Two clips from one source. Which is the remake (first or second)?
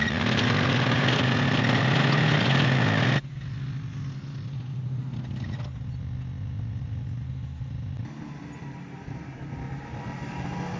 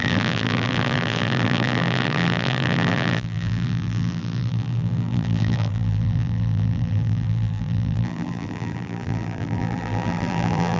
second